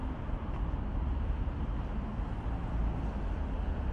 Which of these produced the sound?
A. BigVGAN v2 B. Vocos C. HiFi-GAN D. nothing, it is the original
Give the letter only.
D